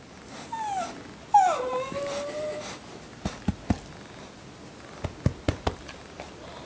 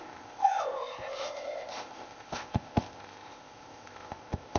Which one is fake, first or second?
second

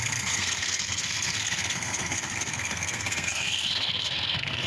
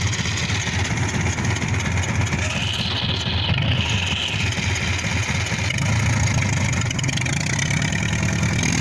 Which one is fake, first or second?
first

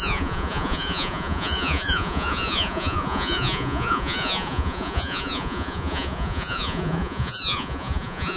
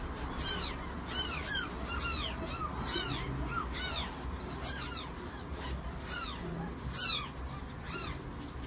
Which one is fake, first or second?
first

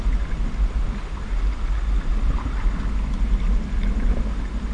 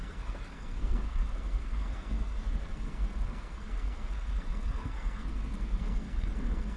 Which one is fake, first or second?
second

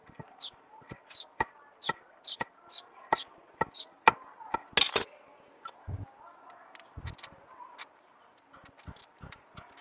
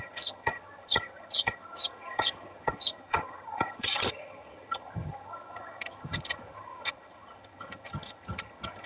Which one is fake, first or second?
second